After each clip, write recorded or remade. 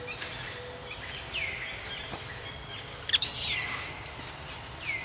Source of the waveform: recorded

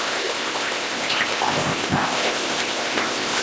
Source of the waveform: remade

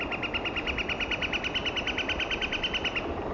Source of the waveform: recorded